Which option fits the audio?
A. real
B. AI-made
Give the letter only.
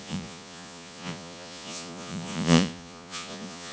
B